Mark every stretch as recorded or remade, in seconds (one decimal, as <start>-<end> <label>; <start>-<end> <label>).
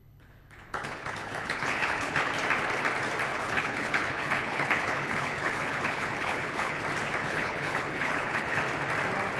0.0-2.3 remade; 2.3-3.3 recorded; 3.3-6.8 remade; 6.8-7.2 recorded; 7.2-8.6 remade; 8.6-9.4 recorded